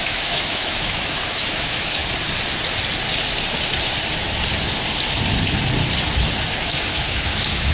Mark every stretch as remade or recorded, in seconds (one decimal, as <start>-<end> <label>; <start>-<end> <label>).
0.0-2.0 remade; 2.0-6.6 recorded; 6.6-7.7 remade